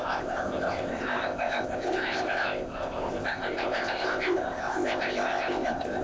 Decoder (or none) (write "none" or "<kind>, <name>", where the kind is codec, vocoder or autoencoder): codec, ZipCodec